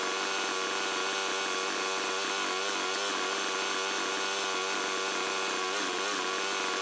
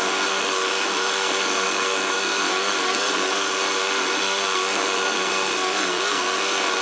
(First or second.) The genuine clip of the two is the first